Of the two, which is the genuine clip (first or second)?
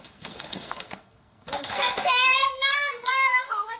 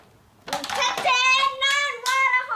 second